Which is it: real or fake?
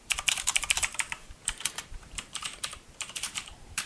fake